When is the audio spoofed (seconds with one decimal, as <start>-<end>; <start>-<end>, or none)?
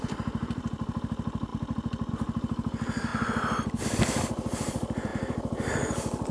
0.0-3.1; 3.8-6.3